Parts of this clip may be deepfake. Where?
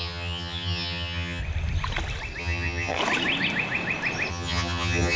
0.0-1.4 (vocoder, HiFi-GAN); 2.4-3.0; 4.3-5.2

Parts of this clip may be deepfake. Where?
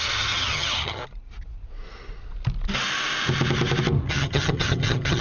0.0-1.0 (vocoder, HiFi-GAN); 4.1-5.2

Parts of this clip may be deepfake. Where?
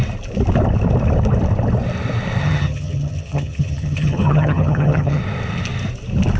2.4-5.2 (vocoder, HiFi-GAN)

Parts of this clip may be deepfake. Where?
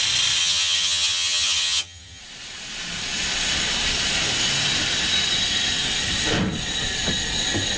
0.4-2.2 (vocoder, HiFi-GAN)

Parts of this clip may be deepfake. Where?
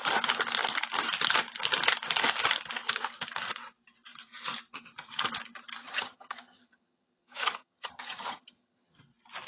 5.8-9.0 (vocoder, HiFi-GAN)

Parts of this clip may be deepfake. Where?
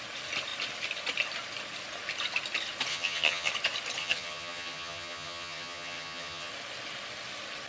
2.9-3.5 (vocoder, HiFi-GAN); 4.0-6.5